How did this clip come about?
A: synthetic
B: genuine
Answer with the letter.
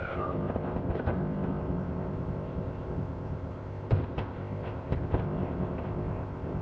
A